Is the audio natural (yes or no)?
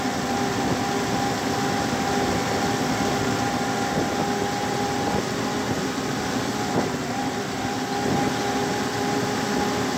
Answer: yes